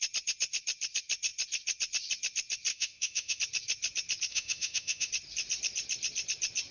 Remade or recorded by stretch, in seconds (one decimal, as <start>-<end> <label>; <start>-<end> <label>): 0.0-2.7 recorded; 2.7-3.4 remade; 3.4-4.3 recorded; 4.3-5.1 remade; 5.1-6.7 recorded